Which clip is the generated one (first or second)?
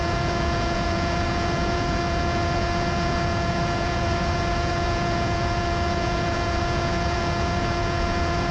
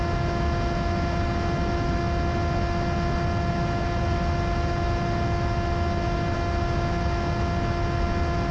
first